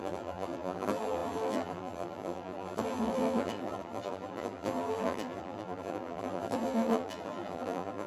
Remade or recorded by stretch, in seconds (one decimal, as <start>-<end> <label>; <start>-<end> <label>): 0.0-8.1 remade